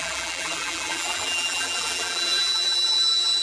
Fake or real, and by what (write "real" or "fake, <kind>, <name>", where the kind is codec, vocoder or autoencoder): fake, vocoder, BigVGAN v2